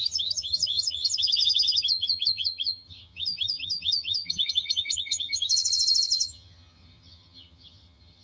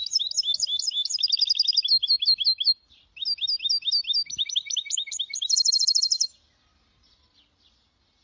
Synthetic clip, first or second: first